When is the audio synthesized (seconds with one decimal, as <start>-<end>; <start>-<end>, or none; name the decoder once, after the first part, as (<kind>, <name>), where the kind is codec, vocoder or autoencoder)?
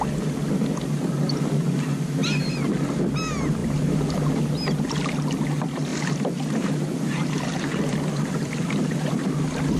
5.9-9.1 (vocoder, BigVGAN v2)